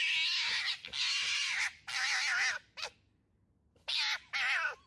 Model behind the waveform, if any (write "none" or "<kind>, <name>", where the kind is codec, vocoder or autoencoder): none